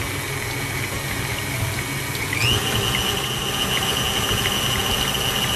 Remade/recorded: recorded